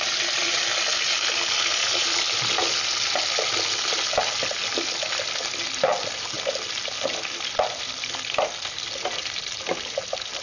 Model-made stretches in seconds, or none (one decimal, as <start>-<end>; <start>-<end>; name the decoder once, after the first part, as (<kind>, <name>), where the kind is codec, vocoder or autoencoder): 1.8-2.5 (vocoder, BigVGAN v2)